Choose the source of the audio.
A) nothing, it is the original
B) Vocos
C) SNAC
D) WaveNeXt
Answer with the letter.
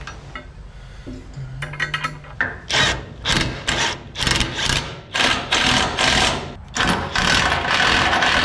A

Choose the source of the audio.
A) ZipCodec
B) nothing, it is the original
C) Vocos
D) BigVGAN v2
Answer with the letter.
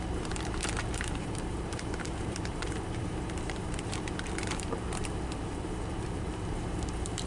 D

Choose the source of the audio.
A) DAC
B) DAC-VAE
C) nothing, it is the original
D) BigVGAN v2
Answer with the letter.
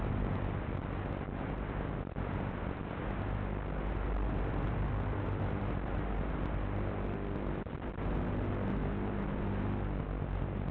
C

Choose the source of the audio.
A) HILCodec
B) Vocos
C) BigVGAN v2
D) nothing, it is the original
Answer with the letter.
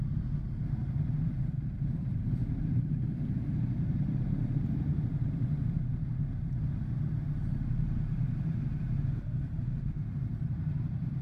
C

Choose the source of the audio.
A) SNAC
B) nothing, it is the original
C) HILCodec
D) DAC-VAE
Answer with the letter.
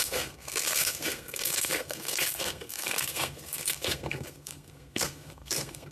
A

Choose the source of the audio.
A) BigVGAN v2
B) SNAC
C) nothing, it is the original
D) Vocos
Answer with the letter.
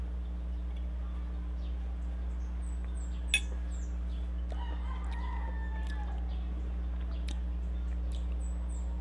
C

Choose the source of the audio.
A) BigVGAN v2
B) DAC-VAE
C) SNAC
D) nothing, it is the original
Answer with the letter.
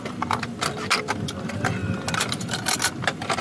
D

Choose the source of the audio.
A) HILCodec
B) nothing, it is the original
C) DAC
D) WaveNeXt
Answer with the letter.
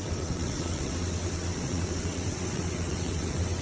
D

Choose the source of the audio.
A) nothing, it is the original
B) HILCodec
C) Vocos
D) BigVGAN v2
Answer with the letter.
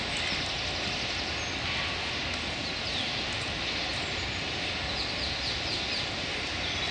A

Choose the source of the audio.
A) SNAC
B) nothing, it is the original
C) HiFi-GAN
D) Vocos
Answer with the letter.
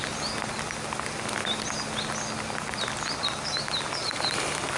B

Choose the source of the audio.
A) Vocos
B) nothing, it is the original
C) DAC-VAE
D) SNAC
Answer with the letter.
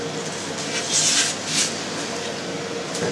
B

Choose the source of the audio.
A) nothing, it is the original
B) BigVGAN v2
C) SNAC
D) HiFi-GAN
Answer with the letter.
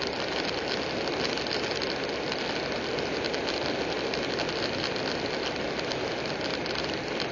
A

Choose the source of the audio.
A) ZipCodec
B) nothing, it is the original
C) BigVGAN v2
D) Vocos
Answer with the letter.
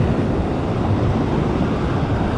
B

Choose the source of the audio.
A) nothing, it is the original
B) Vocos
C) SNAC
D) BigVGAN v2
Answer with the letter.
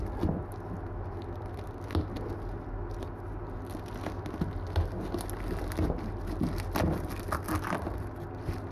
A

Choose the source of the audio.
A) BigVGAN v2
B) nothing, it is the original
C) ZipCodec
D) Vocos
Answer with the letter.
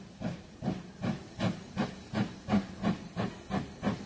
B